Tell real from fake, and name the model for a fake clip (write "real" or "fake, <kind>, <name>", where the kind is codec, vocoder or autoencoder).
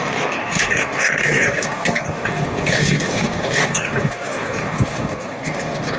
fake, codec, DAC